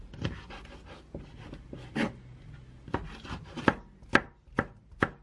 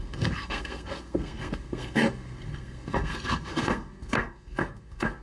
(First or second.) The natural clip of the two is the first